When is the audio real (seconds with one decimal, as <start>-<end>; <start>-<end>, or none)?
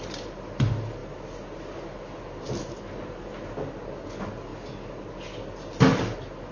0.0-6.5